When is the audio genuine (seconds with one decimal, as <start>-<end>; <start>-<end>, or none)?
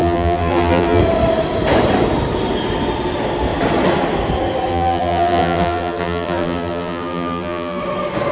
1.0-4.7; 7.8-8.3